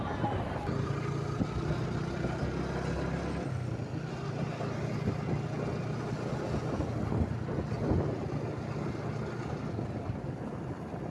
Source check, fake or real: real